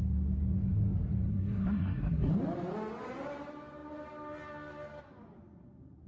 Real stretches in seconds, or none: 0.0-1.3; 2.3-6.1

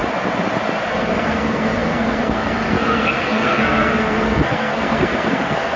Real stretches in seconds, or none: 0.0-0.9